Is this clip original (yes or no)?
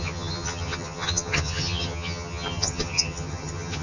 no